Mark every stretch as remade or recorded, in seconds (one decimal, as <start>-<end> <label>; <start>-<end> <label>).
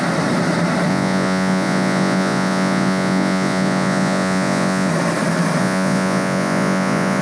0.0-0.9 recorded; 0.9-4.9 remade; 4.9-5.6 recorded; 5.6-7.2 remade